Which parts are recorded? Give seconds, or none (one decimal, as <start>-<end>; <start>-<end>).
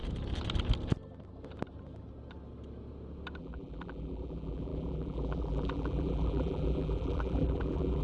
0.0-3.4